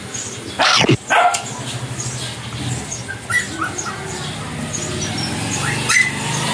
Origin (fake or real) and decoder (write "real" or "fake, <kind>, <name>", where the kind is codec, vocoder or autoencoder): real